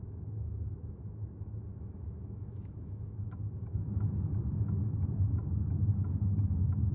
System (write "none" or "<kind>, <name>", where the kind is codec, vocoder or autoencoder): autoencoder, DAC-VAE